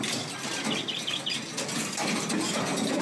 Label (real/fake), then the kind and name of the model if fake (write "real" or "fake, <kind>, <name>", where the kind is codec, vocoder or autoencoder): real